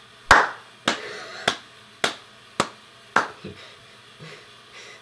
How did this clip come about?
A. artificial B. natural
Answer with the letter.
B